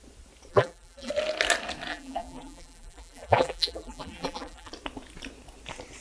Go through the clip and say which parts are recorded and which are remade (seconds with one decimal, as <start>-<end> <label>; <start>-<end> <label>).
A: 0.0-0.5 recorded; 0.5-1.1 remade; 1.1-1.9 recorded; 1.9-4.7 remade; 4.7-6.0 recorded